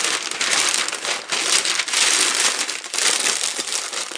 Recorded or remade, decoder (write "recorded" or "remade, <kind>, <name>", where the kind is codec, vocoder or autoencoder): remade, vocoder, BigVGAN v2